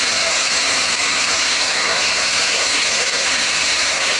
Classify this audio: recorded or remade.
remade